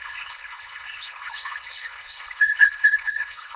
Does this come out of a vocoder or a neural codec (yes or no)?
yes